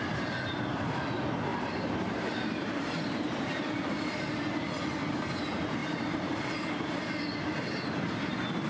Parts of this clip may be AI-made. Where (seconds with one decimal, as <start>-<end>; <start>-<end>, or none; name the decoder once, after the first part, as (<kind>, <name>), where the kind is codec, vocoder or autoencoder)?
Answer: 1.5-3.7 (vocoder, BigVGAN v2); 5.8-7.1